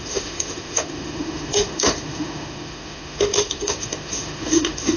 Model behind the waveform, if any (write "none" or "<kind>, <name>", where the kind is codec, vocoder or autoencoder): autoencoder, DAC-VAE